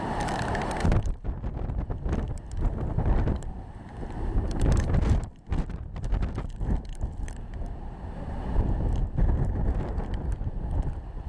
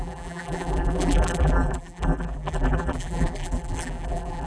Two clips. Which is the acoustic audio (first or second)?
first